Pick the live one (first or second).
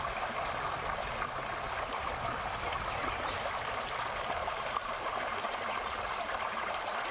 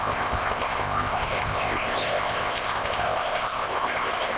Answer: first